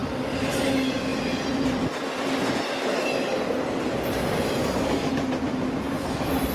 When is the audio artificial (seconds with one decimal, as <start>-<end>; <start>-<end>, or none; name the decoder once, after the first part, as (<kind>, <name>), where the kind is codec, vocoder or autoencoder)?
4.6-5.1 (codec, DAC)